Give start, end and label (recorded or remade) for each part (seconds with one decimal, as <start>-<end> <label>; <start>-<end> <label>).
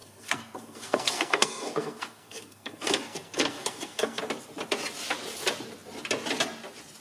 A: 0.0-4.2 remade; 4.2-7.0 recorded